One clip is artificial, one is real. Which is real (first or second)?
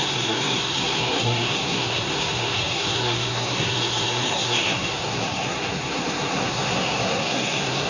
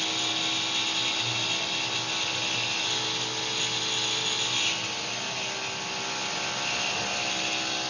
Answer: second